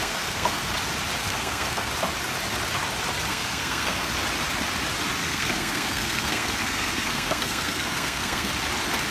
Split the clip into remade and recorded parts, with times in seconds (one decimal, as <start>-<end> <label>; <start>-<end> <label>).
0.0-0.6 remade; 0.6-1.2 recorded; 1.2-1.9 remade; 1.9-3.3 recorded; 3.3-4.1 remade; 4.1-5.2 recorded; 5.2-8.5 remade; 8.5-9.1 recorded